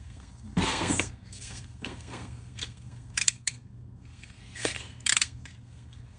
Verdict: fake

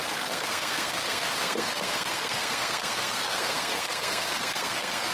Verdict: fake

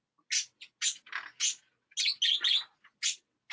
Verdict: real